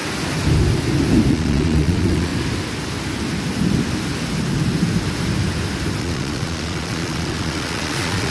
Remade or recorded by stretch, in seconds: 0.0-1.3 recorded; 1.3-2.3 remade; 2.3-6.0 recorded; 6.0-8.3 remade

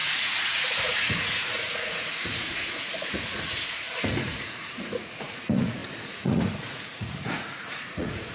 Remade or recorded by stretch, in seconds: 0.0-8.3 remade

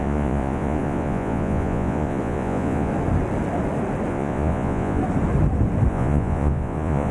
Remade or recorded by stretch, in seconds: 0.0-2.9 remade; 2.9-4.1 recorded; 4.1-5.0 remade; 5.0-5.9 recorded; 5.9-7.1 remade

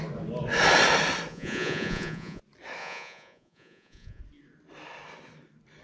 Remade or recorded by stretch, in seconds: 0.0-1.3 recorded; 1.3-2.4 remade; 2.4-2.8 recorded; 2.8-4.2 remade; 4.2-5.8 recorded

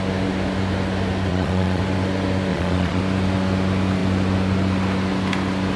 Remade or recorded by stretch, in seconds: 0.0-1.3 recorded; 1.3-1.8 remade; 1.8-2.5 recorded; 2.5-3.0 remade; 3.0-5.8 recorded

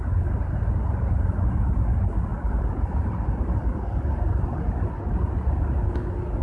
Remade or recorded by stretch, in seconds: 0.0-6.4 recorded